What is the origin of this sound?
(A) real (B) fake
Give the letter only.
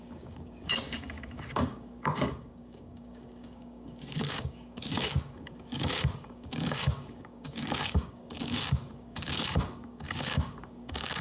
B